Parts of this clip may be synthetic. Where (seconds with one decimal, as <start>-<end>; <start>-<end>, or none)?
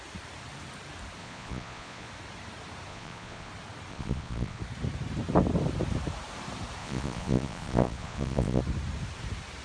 1.2-2.1; 2.9-3.5; 3.9-4.6; 6.8-8.6